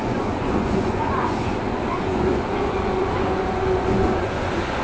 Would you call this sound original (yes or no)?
no